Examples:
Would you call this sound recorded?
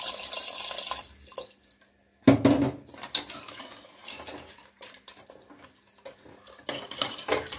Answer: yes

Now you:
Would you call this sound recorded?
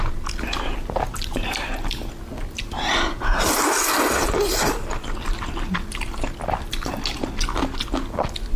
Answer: yes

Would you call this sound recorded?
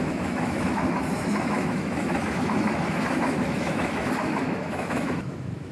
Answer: no